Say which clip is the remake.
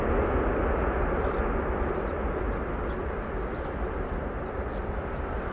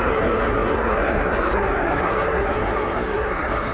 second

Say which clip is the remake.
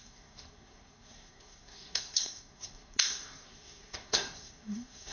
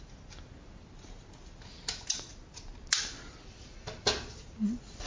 first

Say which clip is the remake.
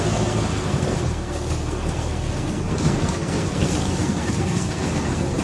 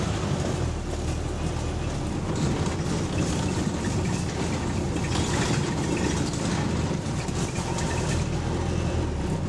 first